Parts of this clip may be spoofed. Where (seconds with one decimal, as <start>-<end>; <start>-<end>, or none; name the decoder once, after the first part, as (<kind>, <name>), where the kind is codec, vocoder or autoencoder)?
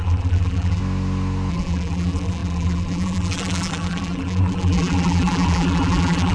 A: 0.0-0.8 (vocoder, BigVGAN v2); 1.5-6.3